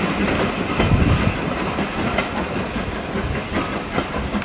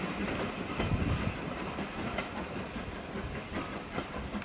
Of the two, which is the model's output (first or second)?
second